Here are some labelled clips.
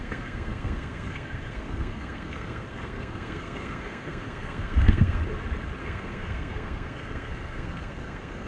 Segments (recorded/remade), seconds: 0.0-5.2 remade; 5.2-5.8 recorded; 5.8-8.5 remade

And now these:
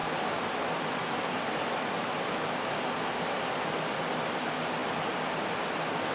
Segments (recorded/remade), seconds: 0.0-3.7 remade; 3.7-6.1 recorded

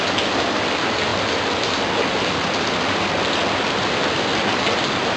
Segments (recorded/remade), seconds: 0.0-5.2 recorded